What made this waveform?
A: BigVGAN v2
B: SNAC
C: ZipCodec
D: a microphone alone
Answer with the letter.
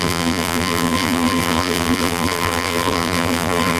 A